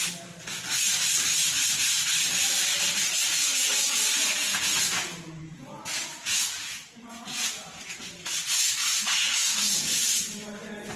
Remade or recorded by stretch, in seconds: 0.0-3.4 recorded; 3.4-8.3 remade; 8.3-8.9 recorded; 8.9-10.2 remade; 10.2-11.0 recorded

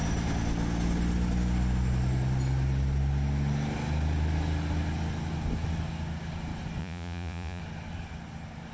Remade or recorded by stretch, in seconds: 0.0-6.8 recorded; 6.8-7.6 remade; 7.6-8.7 recorded

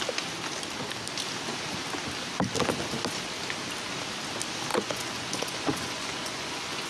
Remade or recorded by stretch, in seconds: 0.0-4.7 recorded; 4.7-6.9 remade

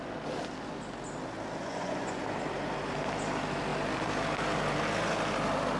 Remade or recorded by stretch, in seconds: 0.0-1.6 recorded; 1.6-2.2 remade; 2.2-5.8 recorded

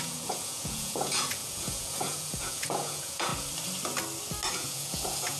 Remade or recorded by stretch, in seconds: 0.0-3.3 remade; 3.3-4.5 recorded; 4.5-5.4 remade

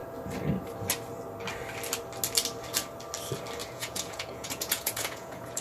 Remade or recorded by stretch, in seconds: 0.0-3.6 recorded; 3.6-5.6 remade

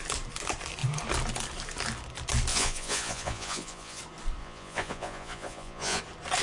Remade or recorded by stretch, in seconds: 0.0-2.5 recorded; 2.5-4.0 remade; 4.0-4.4 recorded; 4.4-6.0 remade; 6.0-6.4 recorded

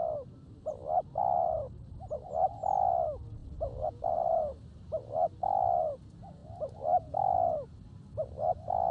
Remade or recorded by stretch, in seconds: 0.0-3.4 recorded; 3.4-4.0 remade; 4.0-8.9 recorded